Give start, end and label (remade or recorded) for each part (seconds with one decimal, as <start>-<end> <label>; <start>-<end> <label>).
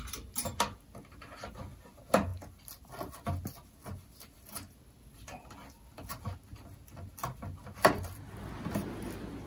0.0-9.5 recorded